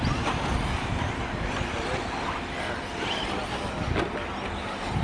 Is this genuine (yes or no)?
yes